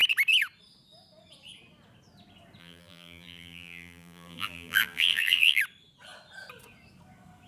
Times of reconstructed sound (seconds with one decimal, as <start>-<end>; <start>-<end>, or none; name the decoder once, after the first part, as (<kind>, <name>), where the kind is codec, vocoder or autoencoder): 2.6-5.6 (vocoder, BigVGAN v2)